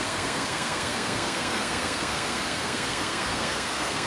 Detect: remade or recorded remade